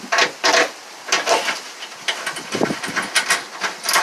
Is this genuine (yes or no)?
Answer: yes